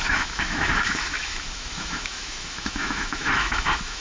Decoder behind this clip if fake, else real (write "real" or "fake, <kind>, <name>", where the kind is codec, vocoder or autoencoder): fake, autoencoder, DAC-VAE